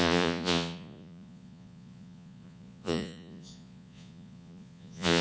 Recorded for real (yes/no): no